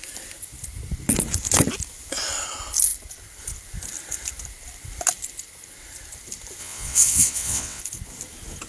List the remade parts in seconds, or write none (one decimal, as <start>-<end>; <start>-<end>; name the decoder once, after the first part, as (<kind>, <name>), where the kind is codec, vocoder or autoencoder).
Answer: 6.6-7.8 (vocoder, WaveNeXt)